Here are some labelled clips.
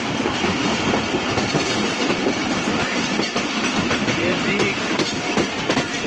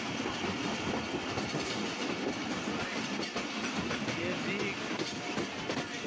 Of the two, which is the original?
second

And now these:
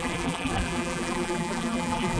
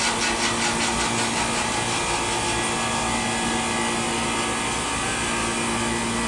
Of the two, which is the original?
second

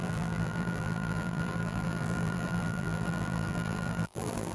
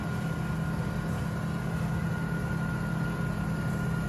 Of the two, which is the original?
second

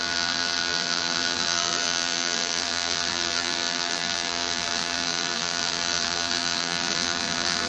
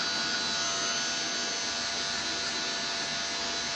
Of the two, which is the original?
second